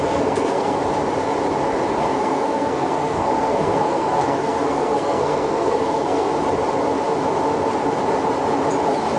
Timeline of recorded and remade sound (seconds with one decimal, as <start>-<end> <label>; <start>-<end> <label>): 0.0-0.8 remade; 0.8-2.0 recorded; 2.0-6.3 remade; 6.3-9.2 recorded